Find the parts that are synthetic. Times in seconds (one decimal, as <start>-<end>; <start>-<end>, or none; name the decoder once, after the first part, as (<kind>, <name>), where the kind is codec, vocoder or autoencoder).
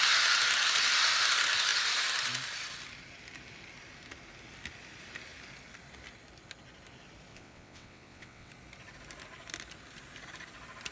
7.3-8.5 (vocoder, WaveNeXt)